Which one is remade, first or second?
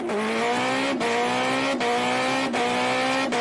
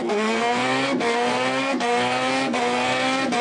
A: second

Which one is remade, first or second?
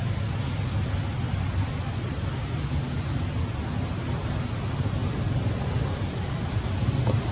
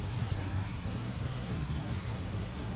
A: second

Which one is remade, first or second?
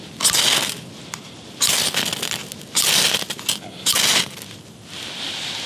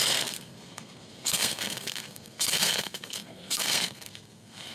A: second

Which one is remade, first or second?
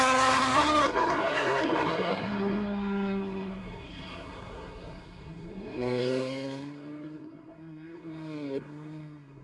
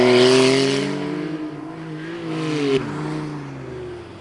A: first